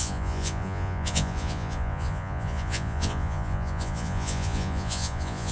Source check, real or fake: fake